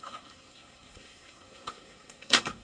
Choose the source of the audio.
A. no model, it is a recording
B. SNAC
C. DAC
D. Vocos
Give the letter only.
B